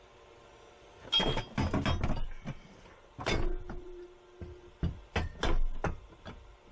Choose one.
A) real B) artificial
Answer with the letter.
A